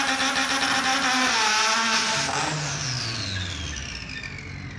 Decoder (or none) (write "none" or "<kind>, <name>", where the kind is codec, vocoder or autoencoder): none